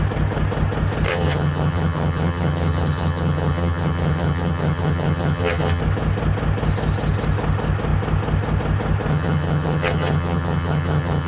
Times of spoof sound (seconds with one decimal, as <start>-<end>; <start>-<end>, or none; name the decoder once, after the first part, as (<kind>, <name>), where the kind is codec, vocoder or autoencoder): 1.1-5.8 (vocoder, HiFi-GAN); 9.1-11.3